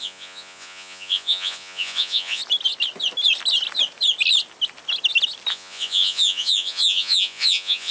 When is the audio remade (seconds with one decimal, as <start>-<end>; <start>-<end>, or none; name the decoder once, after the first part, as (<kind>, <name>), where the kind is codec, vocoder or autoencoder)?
0.0-2.4 (vocoder, Vocos); 5.5-7.9